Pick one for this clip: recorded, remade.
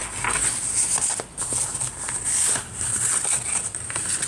recorded